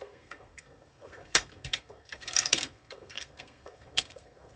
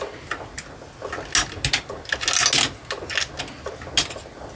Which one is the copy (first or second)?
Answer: first